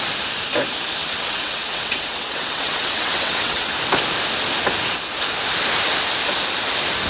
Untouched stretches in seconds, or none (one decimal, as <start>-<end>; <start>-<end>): 0.0-1.0; 3.7-7.1